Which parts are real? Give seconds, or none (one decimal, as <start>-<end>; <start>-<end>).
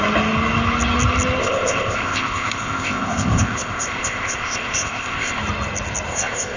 0.0-1.4; 5.4-6.1